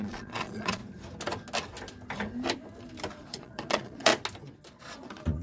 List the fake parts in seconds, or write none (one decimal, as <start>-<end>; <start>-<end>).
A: 0.0-0.8; 3.1-4.1; 4.8-5.4